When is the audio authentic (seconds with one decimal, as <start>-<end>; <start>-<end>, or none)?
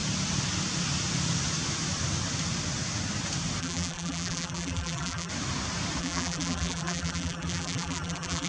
0.0-3.6; 5.3-6.0